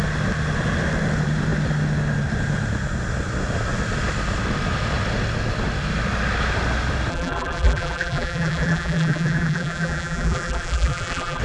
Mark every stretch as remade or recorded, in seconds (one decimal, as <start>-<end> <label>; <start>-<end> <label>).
0.0-7.1 recorded; 7.1-11.4 remade